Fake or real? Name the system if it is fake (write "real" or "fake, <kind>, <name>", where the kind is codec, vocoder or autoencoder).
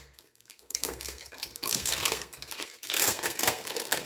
fake, codec, SNAC